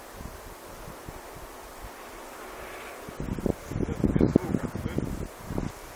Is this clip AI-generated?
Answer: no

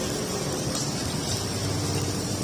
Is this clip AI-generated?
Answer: no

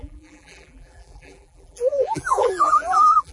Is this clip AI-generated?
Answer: yes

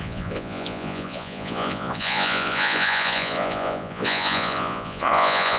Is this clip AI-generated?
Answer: yes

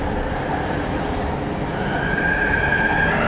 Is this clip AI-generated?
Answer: no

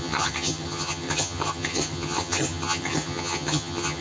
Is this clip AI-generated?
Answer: yes